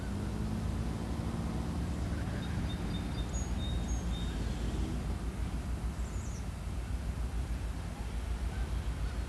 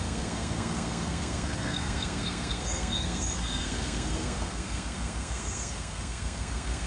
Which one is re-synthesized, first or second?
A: second